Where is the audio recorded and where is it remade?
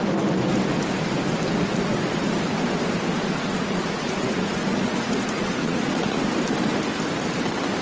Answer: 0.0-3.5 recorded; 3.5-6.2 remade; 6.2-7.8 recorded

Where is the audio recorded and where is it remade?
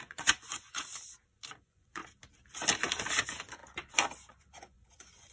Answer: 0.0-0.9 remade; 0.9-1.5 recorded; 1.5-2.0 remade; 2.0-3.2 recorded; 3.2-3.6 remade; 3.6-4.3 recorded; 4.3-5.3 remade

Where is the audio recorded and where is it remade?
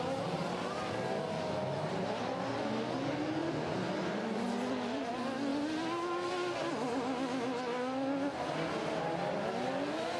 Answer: 0.0-10.2 recorded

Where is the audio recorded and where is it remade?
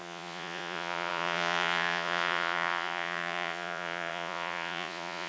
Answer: 0.0-5.3 remade